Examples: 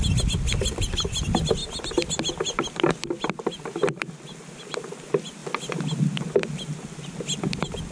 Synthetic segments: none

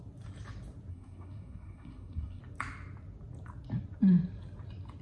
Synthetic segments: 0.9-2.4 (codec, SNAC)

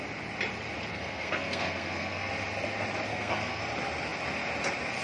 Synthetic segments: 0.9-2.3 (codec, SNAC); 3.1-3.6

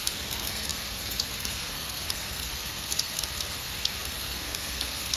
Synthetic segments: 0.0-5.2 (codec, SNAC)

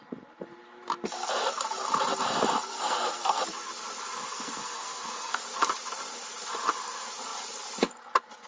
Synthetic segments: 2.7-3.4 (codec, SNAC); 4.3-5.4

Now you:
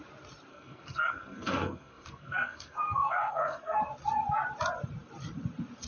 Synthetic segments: 0.5-3.8 (codec, SNAC)

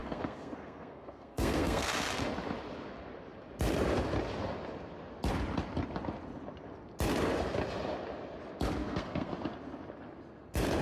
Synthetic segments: 0.0-1.9 (codec, SNAC); 8.8-9.3

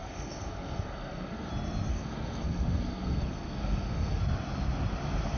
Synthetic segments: 0.0-1.5 (codec, SNAC); 1.9-4.2